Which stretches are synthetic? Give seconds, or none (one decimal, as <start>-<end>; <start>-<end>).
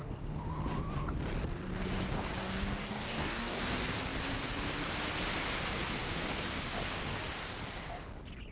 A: 2.4-3.6